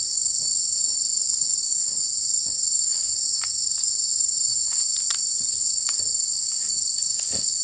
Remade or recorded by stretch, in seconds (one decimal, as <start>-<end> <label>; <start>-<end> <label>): 0.0-4.8 remade; 4.8-5.5 recorded; 5.5-7.6 remade